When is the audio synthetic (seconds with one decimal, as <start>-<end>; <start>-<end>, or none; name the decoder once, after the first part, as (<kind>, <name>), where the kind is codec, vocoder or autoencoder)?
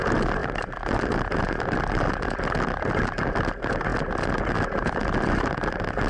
none